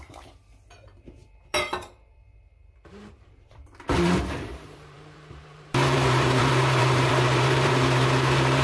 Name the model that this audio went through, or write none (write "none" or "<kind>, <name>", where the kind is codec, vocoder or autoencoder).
vocoder, BigVGAN v2